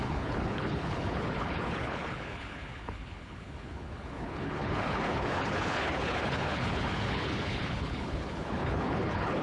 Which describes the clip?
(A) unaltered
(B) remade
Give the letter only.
B